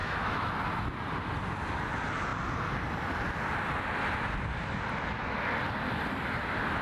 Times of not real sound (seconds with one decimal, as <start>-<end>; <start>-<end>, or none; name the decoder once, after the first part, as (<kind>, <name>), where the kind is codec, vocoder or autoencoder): 0.0-0.5 (autoencoder, DAC-VAE)